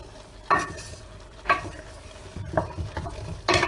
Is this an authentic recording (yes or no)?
yes